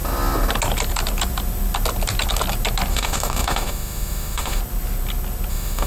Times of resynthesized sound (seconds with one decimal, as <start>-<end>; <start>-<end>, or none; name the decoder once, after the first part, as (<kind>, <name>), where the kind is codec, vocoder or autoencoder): 2.9-4.6 (autoencoder, DAC-VAE); 5.5-5.9